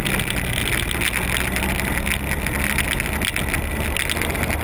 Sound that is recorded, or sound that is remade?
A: recorded